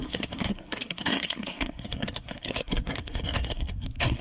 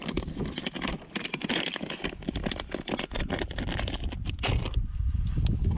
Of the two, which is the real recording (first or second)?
second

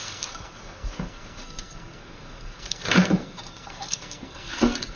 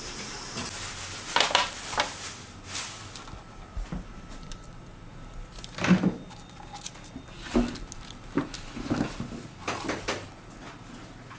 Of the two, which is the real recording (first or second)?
second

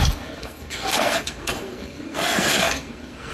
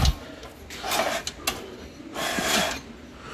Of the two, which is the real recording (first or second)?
second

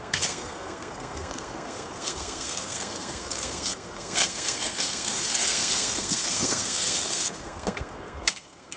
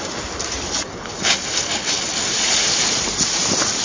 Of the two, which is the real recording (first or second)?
second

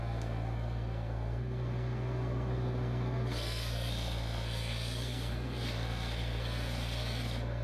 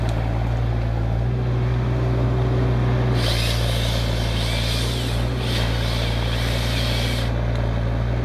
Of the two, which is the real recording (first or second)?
second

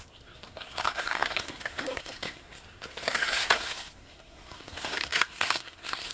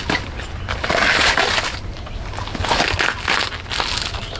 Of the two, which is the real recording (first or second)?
second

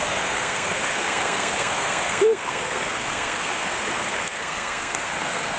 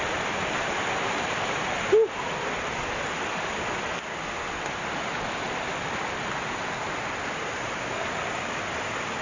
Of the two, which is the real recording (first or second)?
second